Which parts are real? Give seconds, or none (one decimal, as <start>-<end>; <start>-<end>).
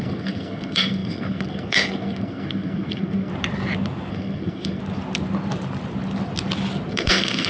3.3-4.1; 4.8-6.9